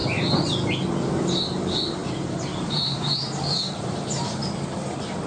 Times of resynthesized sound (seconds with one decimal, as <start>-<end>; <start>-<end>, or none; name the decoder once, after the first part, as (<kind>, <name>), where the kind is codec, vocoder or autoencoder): 1.2-4.4 (vocoder, BigVGAN v2)